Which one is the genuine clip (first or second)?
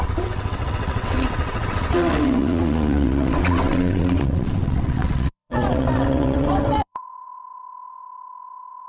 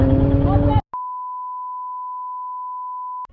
second